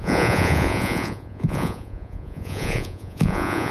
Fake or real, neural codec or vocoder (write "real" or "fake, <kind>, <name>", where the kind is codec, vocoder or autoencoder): fake, vocoder, Vocos